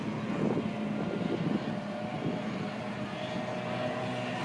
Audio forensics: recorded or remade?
recorded